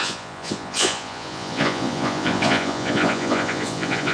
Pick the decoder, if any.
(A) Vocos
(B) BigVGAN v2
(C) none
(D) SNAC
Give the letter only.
A